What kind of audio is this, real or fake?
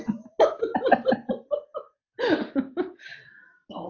real